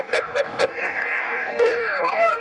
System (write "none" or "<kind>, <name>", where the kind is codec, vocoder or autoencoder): codec, DAC